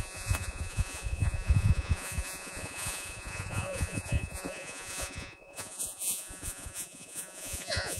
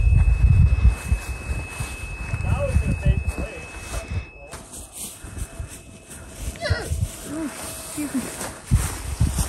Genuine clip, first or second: second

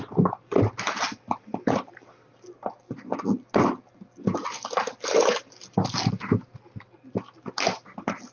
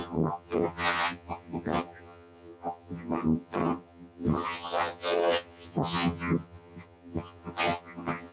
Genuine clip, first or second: first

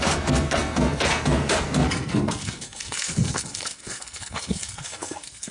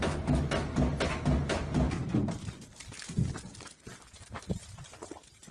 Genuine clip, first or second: second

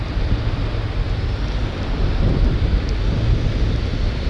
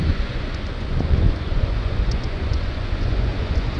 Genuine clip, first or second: first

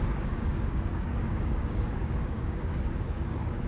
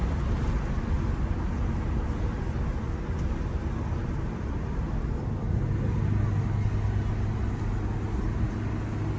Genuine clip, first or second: second